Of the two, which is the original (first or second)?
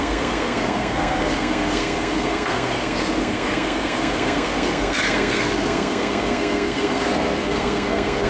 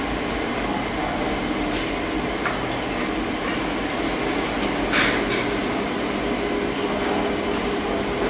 second